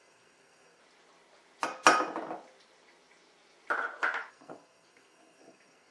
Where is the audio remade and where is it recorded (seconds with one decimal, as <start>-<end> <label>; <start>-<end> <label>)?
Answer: 0.0-0.8 remade; 0.8-4.3 recorded; 4.3-5.9 remade